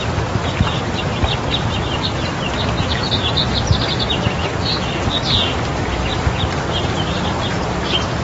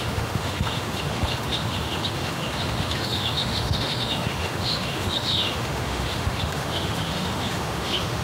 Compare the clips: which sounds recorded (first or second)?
first